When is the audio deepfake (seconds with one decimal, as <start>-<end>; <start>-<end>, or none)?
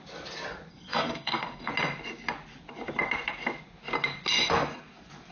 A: 0.7-1.7